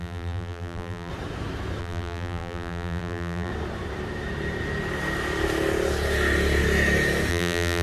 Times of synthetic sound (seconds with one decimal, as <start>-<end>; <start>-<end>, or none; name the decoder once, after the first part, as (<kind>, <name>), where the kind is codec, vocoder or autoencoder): 0.0-1.1 (vocoder, BigVGAN v2); 1.8-3.5; 7.3-7.8

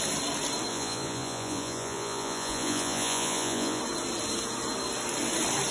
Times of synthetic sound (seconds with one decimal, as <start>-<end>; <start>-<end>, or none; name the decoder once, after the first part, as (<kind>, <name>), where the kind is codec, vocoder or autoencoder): 0.7-3.8 (vocoder, Vocos)

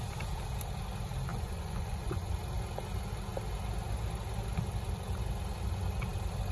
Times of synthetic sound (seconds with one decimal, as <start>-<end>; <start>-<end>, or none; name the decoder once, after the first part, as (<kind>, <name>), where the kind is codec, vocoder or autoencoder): 1.3-2.3 (vocoder, Vocos)

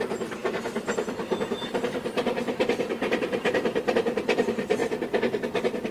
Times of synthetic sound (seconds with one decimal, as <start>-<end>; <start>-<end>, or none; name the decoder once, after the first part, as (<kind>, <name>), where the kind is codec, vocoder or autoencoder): 0.0-4.8 (vocoder, BigVGAN v2)

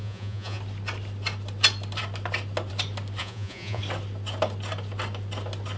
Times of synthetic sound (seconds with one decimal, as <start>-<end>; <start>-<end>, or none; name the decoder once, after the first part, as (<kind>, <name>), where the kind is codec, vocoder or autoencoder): 0.0-0.6 (vocoder, Vocos); 3.2-3.8